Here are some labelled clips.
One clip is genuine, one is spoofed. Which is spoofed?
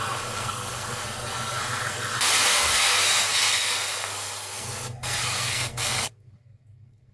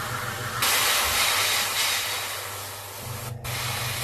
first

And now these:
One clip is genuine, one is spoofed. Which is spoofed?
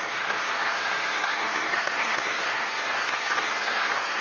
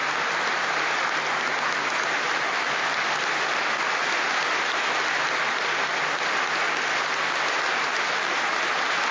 first